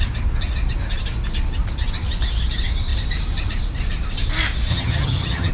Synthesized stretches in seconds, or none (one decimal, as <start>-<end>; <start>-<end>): 4.7-5.5